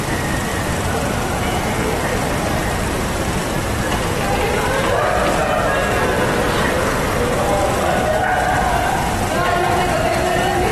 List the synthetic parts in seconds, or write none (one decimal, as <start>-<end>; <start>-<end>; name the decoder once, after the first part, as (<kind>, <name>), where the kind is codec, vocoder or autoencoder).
0.5-5.3 (vocoder, BigVGAN v2)